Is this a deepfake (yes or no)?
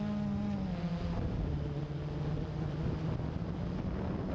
no